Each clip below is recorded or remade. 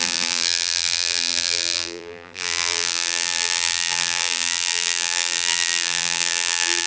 remade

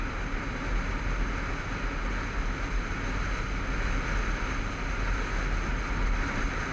recorded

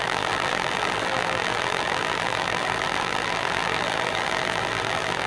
remade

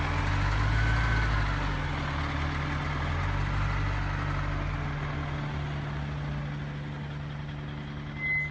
recorded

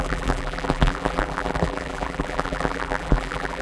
remade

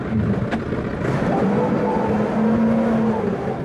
recorded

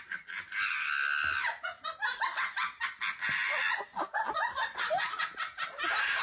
recorded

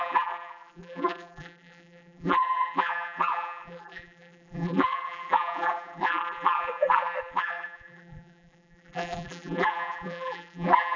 remade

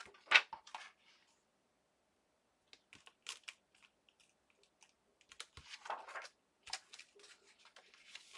recorded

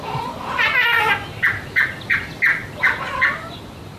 recorded